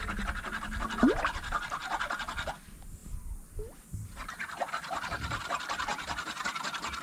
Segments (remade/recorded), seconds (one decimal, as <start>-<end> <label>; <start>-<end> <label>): 0.0-7.0 recorded

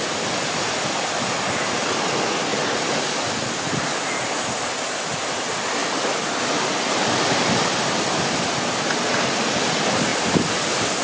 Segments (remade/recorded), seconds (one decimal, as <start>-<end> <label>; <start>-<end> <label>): 0.0-11.0 recorded

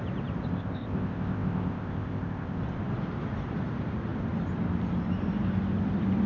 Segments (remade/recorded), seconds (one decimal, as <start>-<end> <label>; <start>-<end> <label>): 0.0-0.5 recorded; 0.5-2.6 remade; 2.6-6.3 recorded

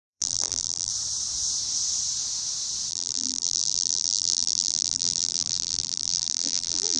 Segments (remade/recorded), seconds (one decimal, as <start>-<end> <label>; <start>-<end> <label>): 0.0-0.9 remade; 0.9-2.9 recorded; 2.9-7.0 remade